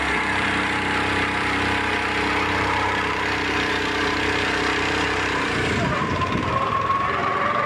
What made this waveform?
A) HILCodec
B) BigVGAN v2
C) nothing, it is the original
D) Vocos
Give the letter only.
B